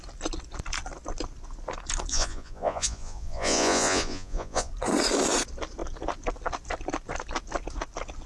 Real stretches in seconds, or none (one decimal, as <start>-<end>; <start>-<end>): 0.0-2.1; 4.7-8.3